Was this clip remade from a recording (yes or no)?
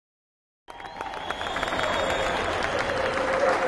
no